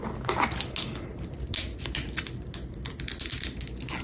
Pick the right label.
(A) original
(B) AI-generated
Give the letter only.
A